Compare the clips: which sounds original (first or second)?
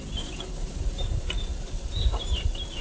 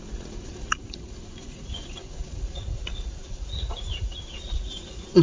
first